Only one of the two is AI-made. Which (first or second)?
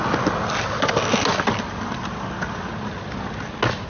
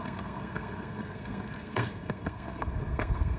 second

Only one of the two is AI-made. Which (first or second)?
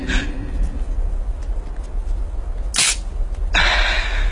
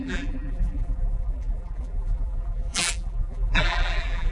second